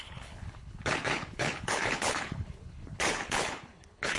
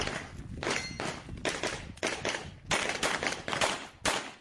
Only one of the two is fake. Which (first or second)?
first